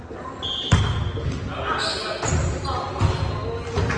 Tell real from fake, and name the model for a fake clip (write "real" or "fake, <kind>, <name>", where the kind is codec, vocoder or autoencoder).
real